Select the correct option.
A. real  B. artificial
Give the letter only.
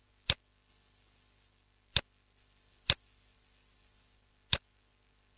A